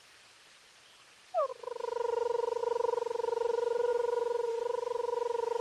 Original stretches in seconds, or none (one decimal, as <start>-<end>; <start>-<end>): none